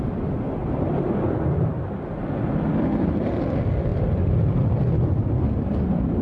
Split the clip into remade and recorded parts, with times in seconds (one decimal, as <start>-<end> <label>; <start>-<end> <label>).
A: 0.0-6.2 recorded